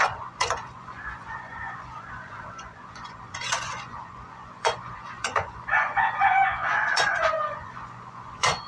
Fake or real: fake